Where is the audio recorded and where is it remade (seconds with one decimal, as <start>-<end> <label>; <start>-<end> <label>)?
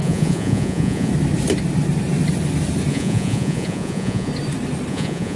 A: 0.0-1.1 remade; 1.1-2.9 recorded; 2.9-4.3 remade; 4.3-4.9 recorded; 4.9-5.4 remade